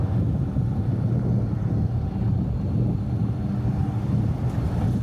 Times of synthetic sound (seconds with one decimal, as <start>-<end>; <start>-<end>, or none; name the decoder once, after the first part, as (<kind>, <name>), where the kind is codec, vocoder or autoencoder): none